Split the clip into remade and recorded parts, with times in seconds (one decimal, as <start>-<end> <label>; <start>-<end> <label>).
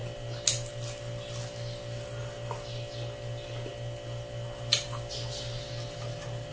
0.0-6.5 recorded